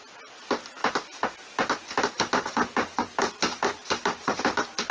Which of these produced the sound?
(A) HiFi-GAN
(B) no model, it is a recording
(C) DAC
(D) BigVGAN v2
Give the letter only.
B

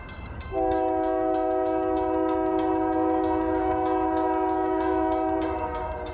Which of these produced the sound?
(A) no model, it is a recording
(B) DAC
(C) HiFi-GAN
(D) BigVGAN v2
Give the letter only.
B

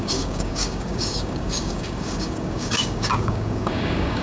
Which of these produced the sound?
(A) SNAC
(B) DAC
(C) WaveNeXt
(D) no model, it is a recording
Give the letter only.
B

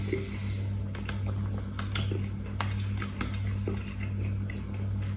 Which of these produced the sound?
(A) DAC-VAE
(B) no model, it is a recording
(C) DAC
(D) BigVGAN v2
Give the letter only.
B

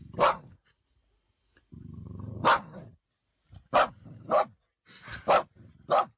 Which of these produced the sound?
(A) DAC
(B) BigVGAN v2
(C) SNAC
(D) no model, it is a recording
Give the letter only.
D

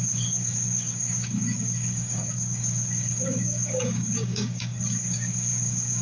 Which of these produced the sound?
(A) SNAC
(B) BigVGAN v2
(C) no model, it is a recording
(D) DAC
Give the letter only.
D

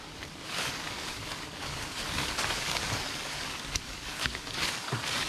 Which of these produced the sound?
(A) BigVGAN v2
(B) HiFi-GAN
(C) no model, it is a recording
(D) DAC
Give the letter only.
D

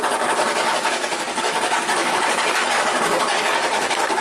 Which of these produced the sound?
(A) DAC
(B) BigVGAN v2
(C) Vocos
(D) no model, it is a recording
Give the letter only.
A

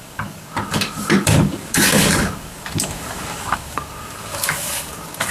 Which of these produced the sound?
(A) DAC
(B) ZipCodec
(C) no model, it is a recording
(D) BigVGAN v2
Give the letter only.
A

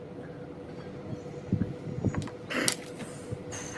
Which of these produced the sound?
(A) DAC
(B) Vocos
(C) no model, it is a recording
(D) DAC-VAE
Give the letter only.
C